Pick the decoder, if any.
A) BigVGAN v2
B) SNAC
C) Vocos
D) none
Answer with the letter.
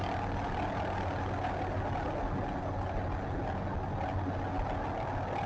D